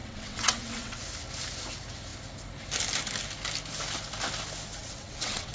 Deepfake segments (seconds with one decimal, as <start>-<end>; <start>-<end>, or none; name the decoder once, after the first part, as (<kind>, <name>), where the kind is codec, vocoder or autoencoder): 0.0-1.0 (vocoder, WaveNeXt); 4.8-5.5